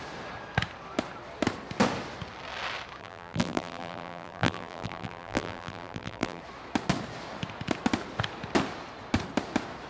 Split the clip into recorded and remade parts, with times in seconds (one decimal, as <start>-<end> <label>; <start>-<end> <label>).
0.0-3.0 recorded; 3.0-6.4 remade; 6.4-9.9 recorded